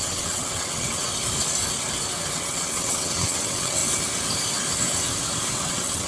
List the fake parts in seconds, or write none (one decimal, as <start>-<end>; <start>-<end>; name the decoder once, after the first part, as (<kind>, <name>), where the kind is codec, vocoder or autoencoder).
0.0-1.1 (vocoder, WaveNeXt); 2.3-3.8; 5.5-6.1